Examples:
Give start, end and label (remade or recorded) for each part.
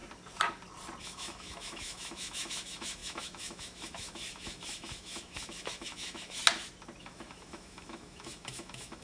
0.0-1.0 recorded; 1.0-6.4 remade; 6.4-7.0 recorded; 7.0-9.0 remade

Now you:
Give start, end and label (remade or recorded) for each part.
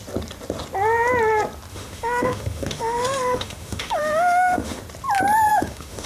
0.0-1.7 recorded; 1.7-4.8 remade; 4.8-5.5 recorded; 5.5-6.1 remade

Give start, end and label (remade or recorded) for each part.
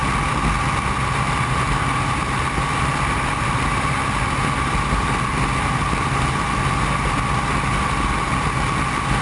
0.0-9.2 recorded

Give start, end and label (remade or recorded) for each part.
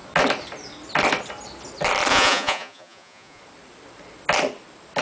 0.0-2.1 recorded; 2.1-3.4 remade; 3.4-5.0 recorded